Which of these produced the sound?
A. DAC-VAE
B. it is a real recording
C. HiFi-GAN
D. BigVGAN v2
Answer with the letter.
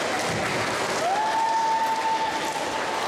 B